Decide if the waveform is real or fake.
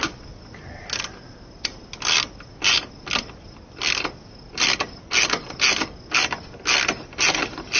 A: real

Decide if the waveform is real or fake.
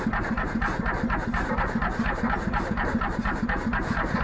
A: real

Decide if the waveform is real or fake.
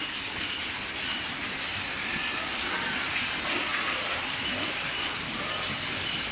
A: real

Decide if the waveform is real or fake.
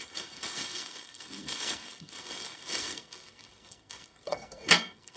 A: fake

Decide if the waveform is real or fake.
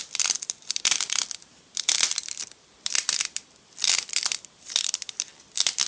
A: fake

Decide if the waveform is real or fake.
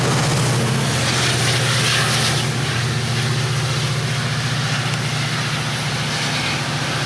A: real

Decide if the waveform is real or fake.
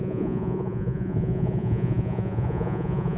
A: fake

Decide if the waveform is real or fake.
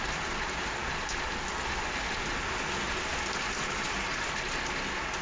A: real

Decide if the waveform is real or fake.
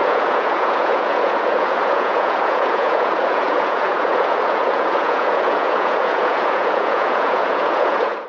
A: fake